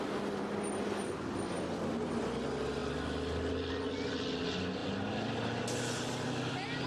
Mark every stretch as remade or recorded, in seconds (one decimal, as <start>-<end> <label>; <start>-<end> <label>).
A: 0.0-6.9 recorded